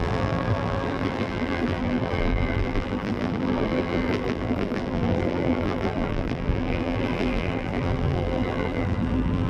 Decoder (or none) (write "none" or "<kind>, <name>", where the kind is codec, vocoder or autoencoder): vocoder, BigVGAN v2